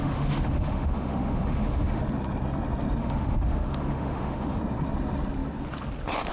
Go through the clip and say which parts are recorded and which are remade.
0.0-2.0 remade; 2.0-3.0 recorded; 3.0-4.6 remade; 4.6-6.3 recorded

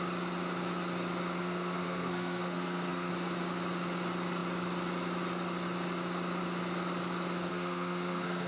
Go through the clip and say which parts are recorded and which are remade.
0.0-1.4 recorded; 1.4-3.1 remade; 3.1-7.5 recorded; 7.5-8.5 remade

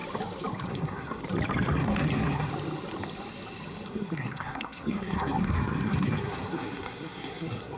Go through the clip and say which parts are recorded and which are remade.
0.0-0.7 recorded; 0.7-1.2 remade; 1.2-1.8 recorded; 1.8-2.5 remade; 2.5-3.9 recorded; 3.9-7.8 remade

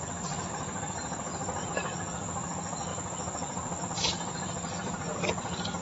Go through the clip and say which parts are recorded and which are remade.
0.0-5.8 recorded

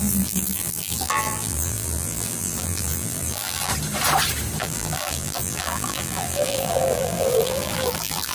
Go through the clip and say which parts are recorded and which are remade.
0.0-3.7 remade; 3.7-4.6 recorded; 4.6-8.3 remade

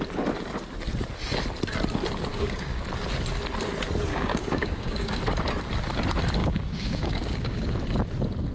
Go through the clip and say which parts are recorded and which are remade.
0.0-2.3 recorded; 2.3-2.8 remade; 2.8-4.1 recorded; 4.1-5.2 remade; 5.2-6.4 recorded; 6.4-7.8 remade; 7.8-8.5 recorded